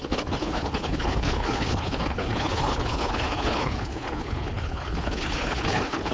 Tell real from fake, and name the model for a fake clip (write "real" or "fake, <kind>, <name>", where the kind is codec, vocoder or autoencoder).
fake, codec, HILCodec